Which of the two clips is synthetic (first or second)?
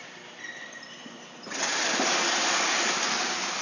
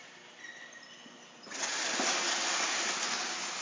first